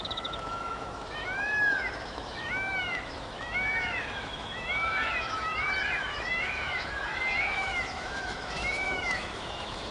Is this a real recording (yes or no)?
no